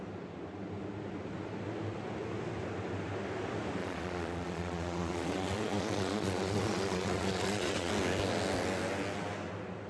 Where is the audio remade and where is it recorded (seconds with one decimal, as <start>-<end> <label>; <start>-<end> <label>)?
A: 0.0-3.8 recorded; 3.8-7.9 remade; 7.9-9.9 recorded